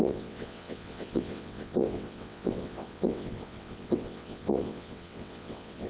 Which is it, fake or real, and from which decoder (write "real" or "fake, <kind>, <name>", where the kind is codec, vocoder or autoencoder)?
fake, vocoder, WaveNeXt